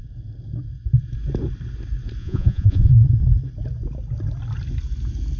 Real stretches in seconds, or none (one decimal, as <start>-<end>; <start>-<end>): 0.0-2.2; 2.9-5.4